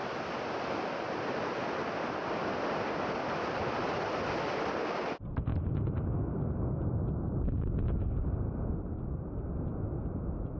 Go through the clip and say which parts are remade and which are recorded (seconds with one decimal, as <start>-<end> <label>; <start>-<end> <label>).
0.0-10.6 recorded